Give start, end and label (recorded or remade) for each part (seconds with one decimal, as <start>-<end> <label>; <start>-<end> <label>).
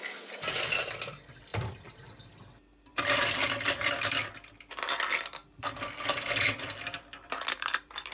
0.0-1.5 recorded; 1.5-4.7 remade; 4.7-5.4 recorded; 5.4-8.1 remade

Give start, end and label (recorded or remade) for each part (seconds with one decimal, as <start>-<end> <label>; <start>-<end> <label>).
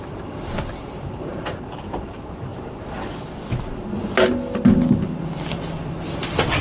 0.0-1.3 remade; 1.3-2.0 recorded; 2.0-2.5 remade; 2.5-6.6 recorded